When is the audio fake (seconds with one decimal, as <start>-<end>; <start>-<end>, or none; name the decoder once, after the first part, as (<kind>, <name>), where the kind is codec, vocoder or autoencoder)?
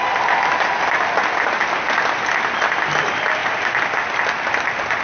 none